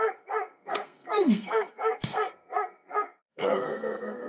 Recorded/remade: remade